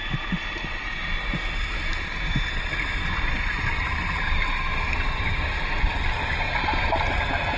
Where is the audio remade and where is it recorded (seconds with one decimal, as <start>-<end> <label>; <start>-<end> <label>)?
0.0-7.6 recorded